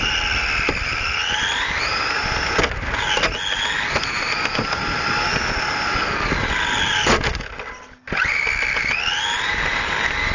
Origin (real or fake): real